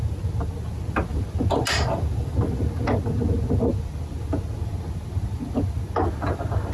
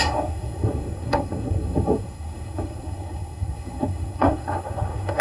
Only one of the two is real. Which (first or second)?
first